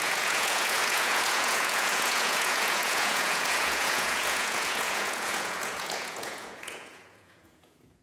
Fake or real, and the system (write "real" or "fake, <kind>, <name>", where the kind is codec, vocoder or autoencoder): fake, vocoder, Vocos